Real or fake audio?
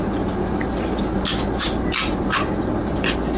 real